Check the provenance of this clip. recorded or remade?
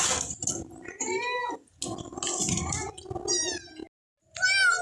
recorded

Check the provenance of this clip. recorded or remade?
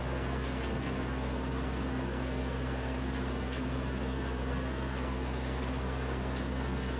remade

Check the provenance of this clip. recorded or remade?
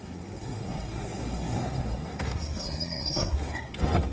remade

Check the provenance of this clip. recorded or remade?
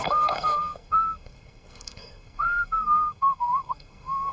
remade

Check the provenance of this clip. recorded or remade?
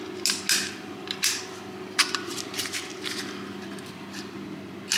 recorded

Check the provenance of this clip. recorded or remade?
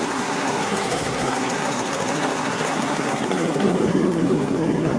remade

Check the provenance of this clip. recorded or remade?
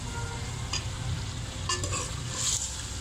recorded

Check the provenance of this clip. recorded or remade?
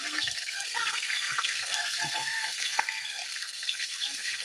remade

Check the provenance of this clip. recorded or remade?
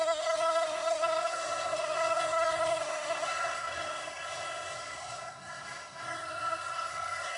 remade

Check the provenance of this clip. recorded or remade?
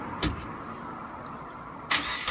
recorded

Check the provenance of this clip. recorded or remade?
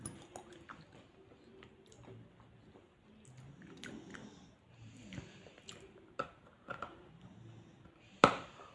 recorded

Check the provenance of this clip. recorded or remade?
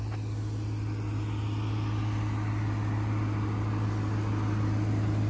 recorded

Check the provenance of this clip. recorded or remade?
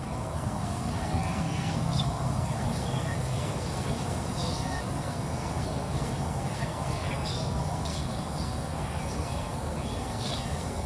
remade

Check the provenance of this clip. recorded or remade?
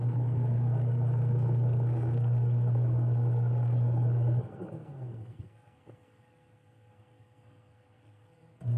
remade